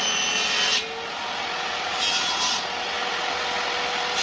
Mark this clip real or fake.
real